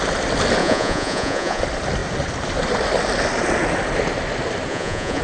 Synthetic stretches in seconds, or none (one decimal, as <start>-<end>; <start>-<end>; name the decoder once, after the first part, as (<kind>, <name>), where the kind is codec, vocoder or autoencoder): 0.6-1.6 (vocoder, Vocos); 4.7-5.2